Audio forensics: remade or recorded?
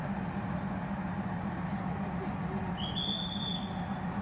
recorded